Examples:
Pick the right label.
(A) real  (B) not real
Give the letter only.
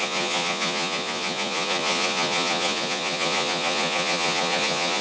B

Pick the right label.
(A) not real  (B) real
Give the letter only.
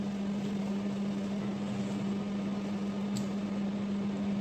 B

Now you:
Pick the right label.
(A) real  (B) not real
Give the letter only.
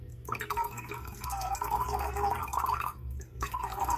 B